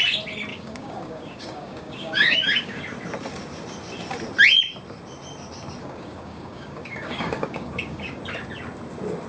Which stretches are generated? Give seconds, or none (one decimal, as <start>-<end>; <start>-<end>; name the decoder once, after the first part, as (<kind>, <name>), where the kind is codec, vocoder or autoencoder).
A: 0.5-2.8 (codec, DAC); 5.8-8.2